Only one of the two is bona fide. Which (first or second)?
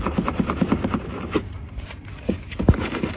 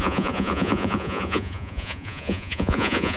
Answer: first